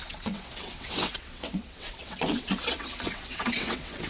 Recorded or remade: remade